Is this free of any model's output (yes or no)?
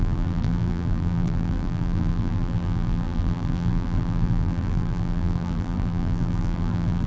no